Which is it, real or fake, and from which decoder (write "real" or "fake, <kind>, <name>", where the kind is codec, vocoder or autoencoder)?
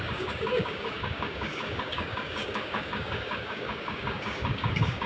fake, codec, DAC